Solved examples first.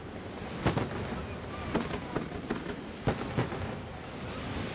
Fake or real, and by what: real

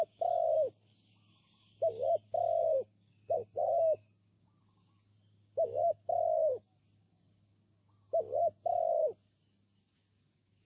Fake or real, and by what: fake, codec, DAC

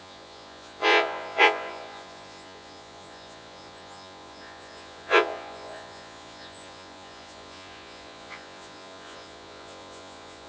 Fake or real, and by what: fake, vocoder, Vocos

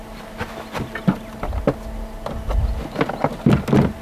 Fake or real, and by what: real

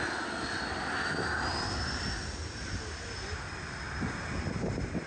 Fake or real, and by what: real